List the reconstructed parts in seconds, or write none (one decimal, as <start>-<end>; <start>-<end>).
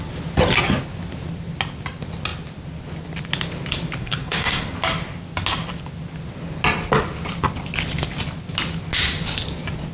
4.0-4.6